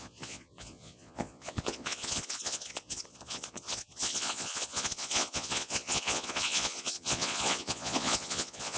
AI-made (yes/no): yes